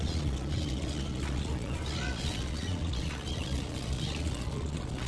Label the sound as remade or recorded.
remade